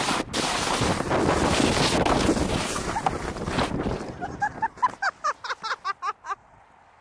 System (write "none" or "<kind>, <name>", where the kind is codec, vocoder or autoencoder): none